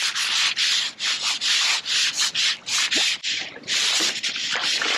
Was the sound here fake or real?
real